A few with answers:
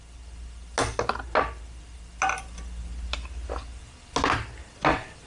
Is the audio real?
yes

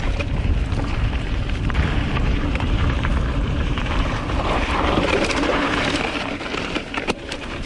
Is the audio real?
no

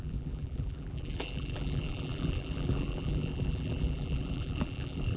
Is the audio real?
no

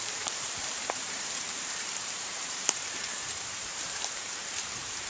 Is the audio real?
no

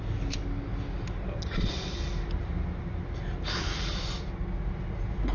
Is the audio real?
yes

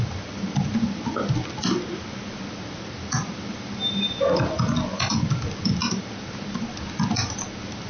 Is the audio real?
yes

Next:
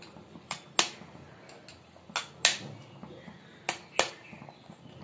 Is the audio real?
yes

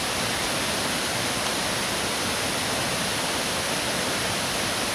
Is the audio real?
no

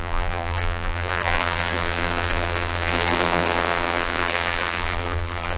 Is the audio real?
no